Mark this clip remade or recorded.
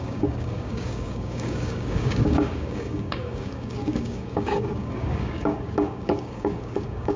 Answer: remade